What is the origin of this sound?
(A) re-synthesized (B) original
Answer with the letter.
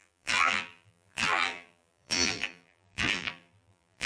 A